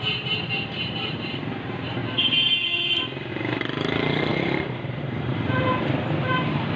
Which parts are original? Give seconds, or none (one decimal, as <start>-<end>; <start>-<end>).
2.0-3.3